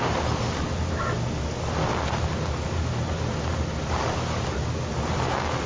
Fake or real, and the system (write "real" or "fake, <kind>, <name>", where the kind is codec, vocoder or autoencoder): real